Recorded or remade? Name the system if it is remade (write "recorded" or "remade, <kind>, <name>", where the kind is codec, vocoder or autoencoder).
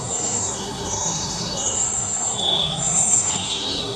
remade, codec, SNAC